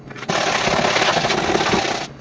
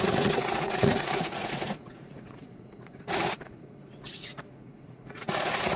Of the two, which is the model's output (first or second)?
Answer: second